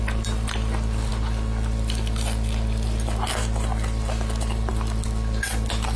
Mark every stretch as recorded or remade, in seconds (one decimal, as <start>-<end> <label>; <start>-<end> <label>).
0.0-6.0 recorded